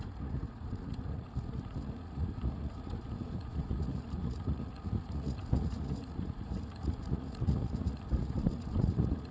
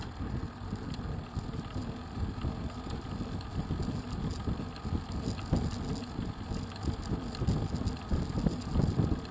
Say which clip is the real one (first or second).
second